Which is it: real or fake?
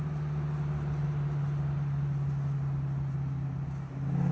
real